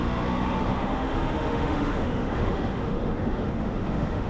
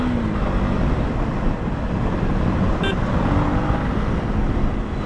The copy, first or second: first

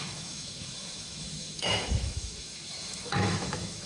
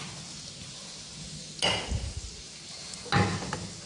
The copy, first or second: first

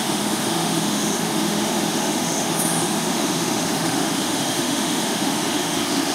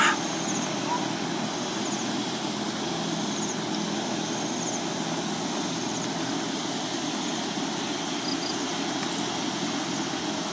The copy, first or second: first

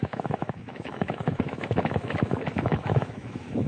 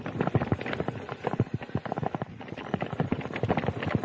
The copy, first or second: first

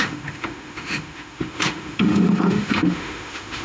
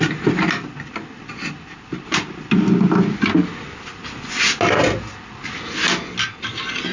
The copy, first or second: first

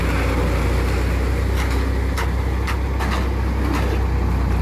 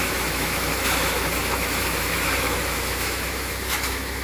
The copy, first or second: second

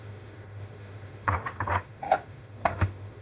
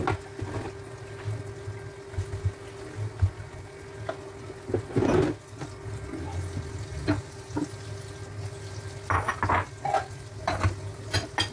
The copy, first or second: first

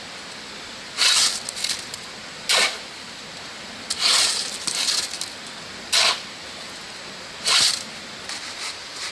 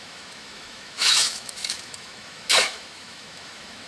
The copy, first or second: second